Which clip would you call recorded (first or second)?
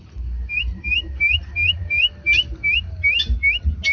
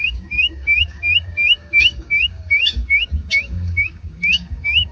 first